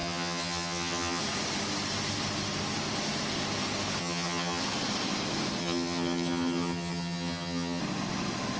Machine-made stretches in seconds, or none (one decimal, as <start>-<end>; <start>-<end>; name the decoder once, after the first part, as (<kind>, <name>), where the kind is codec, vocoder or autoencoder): 0.0-1.2 (vocoder, HiFi-GAN); 4.0-4.6; 5.6-7.8